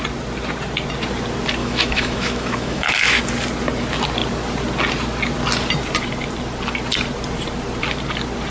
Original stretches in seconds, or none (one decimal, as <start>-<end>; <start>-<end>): 0.0-1.6; 3.2-8.5